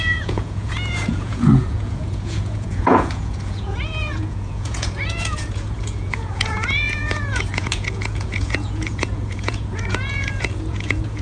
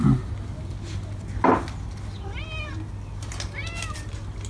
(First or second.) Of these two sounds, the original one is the second